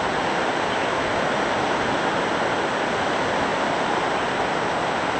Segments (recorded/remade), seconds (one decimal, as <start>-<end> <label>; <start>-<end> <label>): 0.0-5.2 recorded